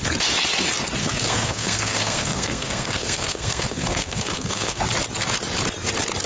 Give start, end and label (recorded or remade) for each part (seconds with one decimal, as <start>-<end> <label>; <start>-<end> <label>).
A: 0.0-1.0 recorded; 1.0-4.8 remade; 4.8-6.3 recorded